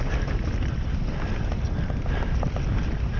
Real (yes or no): yes